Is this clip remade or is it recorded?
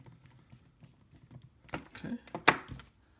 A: recorded